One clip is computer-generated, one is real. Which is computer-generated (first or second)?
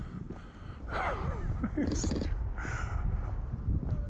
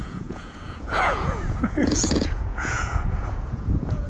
second